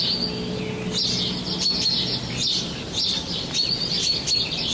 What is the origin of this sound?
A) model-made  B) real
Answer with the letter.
B